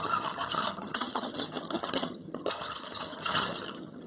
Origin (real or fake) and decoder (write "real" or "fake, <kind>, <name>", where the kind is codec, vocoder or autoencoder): fake, vocoder, HiFi-GAN